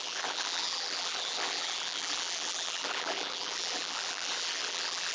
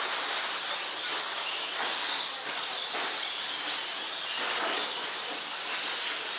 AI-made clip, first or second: first